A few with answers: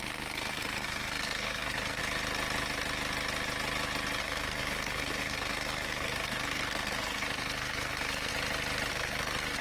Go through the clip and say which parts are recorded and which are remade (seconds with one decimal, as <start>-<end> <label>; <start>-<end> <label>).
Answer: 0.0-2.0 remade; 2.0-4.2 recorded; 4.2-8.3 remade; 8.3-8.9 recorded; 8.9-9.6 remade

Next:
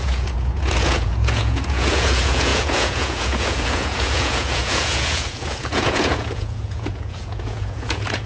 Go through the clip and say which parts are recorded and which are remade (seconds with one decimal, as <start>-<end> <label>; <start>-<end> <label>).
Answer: 0.0-8.3 remade

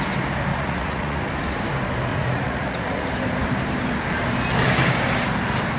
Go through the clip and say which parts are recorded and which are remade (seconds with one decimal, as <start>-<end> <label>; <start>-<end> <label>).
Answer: 0.0-0.5 recorded; 0.5-1.2 remade; 1.2-2.1 recorded; 2.1-3.1 remade; 3.1-5.8 recorded

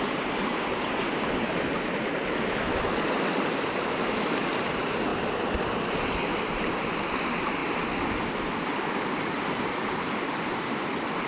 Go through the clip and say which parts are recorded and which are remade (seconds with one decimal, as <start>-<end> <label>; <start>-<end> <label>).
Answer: 0.0-11.3 recorded

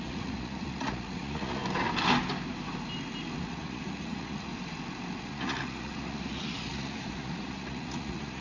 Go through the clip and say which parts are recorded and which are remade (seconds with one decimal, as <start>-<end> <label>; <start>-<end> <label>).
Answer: 0.0-1.6 remade; 1.6-3.4 recorded; 3.4-4.5 remade; 4.5-5.2 recorded; 5.2-8.4 remade